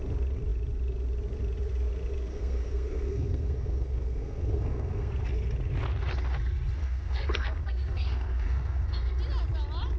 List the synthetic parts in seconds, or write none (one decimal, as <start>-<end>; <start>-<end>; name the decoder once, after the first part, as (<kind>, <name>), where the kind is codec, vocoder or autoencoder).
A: 2.3-5.1 (codec, SNAC); 6.8-9.2